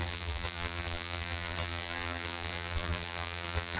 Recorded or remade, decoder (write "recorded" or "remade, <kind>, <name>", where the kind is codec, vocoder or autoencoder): remade, vocoder, BigVGAN v2